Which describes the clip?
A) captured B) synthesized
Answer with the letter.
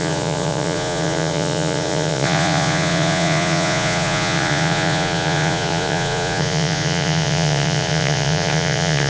B